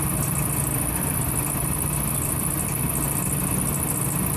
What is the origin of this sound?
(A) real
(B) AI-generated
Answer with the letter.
A